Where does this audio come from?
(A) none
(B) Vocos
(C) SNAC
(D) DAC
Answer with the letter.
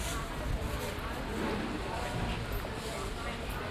A